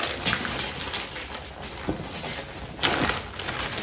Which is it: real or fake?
real